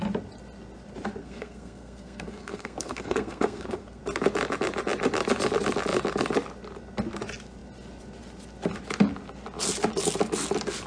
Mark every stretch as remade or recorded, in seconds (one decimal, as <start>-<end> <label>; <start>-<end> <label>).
0.0-1.2 recorded; 1.2-4.0 remade; 4.0-10.9 recorded